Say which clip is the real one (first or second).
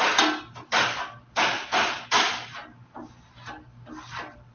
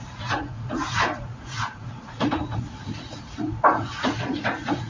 first